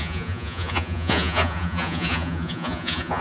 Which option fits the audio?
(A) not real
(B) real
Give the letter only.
A